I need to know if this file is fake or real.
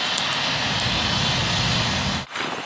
real